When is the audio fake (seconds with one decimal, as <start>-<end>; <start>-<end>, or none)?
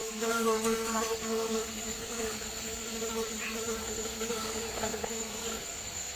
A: 0.0-2.8; 3.8-6.2